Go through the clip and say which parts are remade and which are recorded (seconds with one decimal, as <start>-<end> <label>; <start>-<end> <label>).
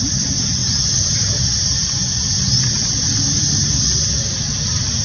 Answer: 0.0-5.0 recorded